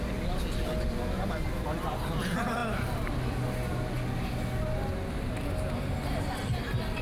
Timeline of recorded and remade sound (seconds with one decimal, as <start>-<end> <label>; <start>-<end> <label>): 0.0-7.0 recorded